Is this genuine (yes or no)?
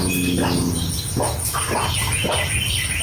yes